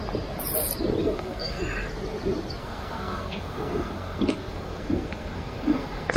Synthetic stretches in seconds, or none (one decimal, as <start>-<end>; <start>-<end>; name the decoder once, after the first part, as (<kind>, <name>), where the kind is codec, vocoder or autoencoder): 1.0-1.6 (codec, SNAC); 2.6-6.2